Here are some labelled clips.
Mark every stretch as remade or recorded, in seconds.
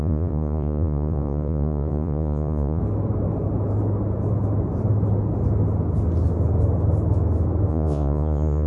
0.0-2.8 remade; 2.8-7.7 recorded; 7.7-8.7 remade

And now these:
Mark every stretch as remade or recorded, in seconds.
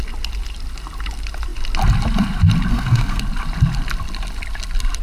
0.0-2.7 recorded; 2.7-3.2 remade; 3.2-5.0 recorded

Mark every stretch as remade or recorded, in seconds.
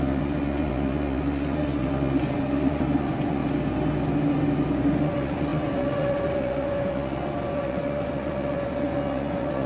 0.0-3.4 remade; 3.4-5.0 recorded; 5.0-9.7 remade